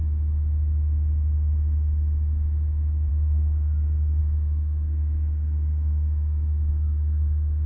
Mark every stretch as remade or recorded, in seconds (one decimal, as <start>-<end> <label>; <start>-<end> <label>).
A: 0.0-3.1 recorded; 3.1-7.7 remade